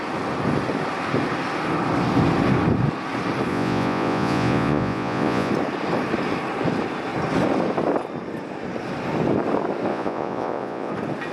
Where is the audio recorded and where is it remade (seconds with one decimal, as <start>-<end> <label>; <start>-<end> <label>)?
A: 0.0-3.5 recorded; 3.5-5.5 remade; 5.5-9.9 recorded; 9.9-10.9 remade; 10.9-11.3 recorded